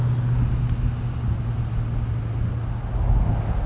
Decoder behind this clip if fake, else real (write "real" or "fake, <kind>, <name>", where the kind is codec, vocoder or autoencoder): real